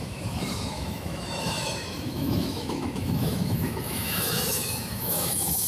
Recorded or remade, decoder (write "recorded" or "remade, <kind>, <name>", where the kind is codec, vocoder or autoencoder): remade, autoencoder, DAC-VAE